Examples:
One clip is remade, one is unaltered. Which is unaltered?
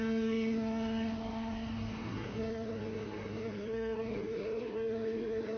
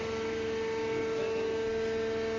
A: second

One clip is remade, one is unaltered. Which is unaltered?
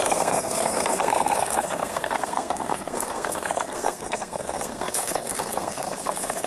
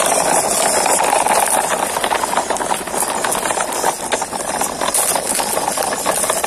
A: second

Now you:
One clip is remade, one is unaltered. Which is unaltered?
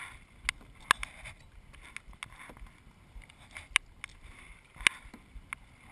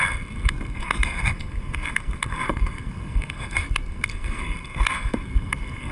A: first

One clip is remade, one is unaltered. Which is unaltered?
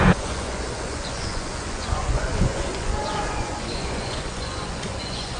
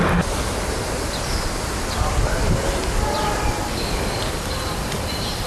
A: second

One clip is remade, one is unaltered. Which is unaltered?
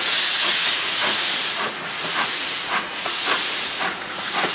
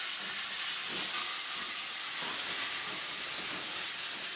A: second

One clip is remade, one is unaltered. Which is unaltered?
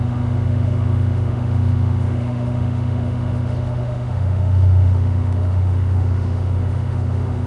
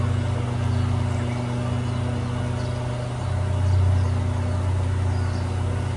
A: second